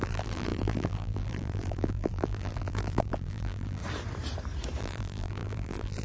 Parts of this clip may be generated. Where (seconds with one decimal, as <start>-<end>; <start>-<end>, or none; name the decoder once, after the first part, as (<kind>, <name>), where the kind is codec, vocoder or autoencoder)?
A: 0.0-3.8 (vocoder, BigVGAN v2); 4.8-6.0